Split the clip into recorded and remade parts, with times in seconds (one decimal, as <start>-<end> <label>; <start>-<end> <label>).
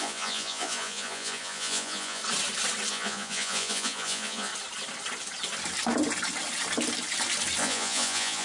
0.0-2.2 remade; 2.2-2.9 recorded; 2.9-4.5 remade; 4.5-7.6 recorded; 7.6-8.4 remade